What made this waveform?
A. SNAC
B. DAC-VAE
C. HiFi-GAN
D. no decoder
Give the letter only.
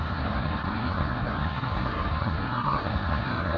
A